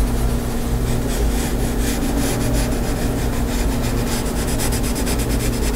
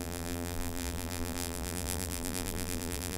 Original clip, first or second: first